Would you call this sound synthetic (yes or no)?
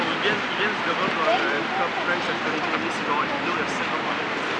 no